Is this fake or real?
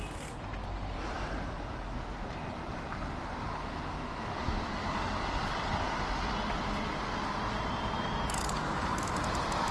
real